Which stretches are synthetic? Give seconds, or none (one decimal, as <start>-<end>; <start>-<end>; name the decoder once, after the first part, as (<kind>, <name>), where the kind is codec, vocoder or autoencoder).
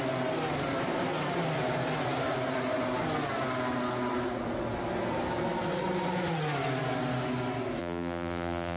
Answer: 7.8-8.8 (vocoder, BigVGAN v2)